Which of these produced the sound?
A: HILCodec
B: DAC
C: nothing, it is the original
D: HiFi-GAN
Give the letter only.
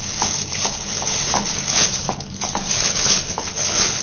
A